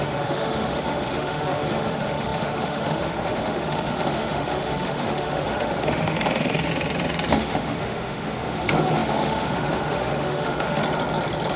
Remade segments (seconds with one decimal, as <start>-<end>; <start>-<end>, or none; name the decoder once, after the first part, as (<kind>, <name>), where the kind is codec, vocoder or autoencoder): 0.0-6.7 (autoencoder, DAC-VAE); 7.3-10.8